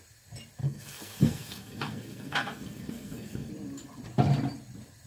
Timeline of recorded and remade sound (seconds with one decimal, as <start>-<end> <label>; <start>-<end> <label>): 0.0-0.6 recorded; 0.6-3.5 remade; 3.5-5.1 recorded